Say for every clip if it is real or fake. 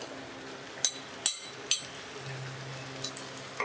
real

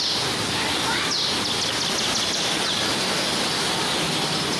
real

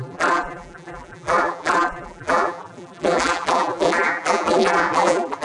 fake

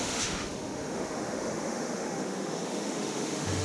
fake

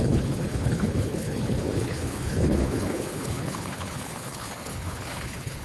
fake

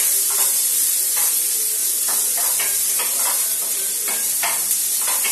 fake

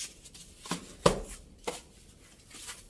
real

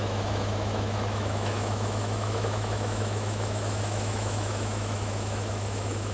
fake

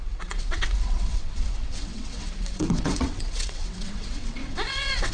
fake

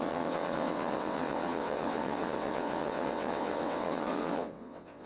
fake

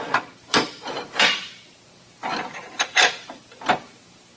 fake